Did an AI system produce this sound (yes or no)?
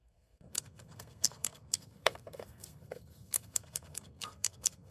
yes